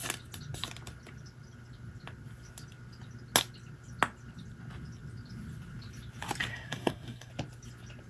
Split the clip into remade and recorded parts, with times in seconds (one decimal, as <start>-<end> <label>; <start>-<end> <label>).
0.0-6.5 recorded; 6.5-7.3 remade; 7.3-8.1 recorded